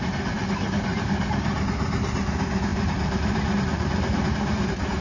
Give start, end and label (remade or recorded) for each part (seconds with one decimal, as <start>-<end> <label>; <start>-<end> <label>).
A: 0.0-0.9 recorded; 0.9-2.1 remade; 2.1-2.7 recorded; 2.7-5.0 remade

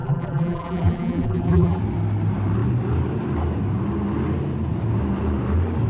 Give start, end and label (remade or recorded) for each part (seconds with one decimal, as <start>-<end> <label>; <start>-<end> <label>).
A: 0.0-1.8 remade; 1.8-5.9 recorded

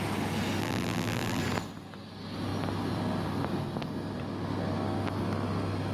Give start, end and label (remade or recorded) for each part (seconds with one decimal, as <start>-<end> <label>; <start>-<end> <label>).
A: 0.0-0.6 recorded; 0.6-1.4 remade; 1.4-5.9 recorded

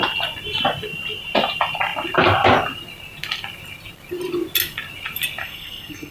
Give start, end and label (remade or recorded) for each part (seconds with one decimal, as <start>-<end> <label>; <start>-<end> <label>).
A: 0.0-5.4 recorded; 5.4-6.1 remade

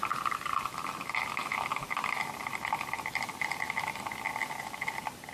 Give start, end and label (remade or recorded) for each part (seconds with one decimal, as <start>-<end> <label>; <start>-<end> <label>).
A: 0.0-5.3 recorded

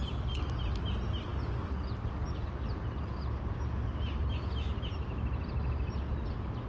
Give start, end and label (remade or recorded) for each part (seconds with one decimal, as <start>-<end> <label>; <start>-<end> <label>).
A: 0.0-6.7 recorded